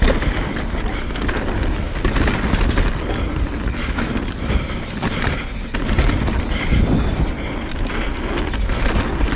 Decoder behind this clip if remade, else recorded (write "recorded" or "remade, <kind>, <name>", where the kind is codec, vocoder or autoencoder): recorded